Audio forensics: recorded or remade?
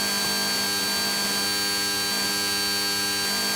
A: recorded